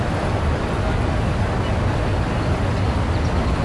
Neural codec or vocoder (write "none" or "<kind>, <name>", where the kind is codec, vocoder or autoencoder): none